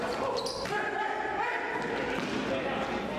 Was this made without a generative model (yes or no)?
yes